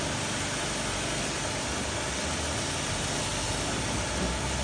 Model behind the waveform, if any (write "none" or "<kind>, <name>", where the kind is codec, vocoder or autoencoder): none